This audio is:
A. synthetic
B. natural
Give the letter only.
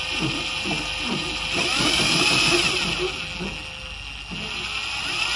B